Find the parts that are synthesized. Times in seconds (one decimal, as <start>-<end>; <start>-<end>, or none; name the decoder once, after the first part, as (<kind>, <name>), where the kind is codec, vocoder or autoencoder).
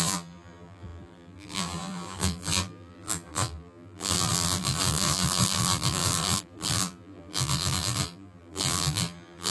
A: 0.0-9.5 (vocoder, BigVGAN v2)